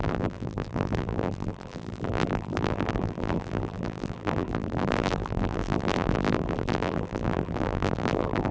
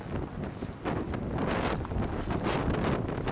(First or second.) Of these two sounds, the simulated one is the first